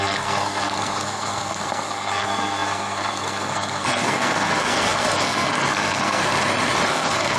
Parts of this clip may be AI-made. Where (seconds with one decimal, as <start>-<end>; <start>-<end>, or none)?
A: 0.0-6.2; 6.9-7.4